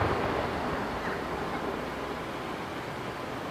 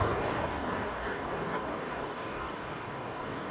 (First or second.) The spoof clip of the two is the second